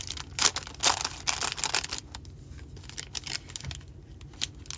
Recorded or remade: recorded